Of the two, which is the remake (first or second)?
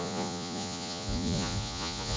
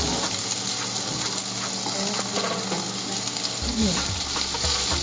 first